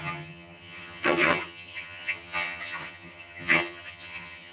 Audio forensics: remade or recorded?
remade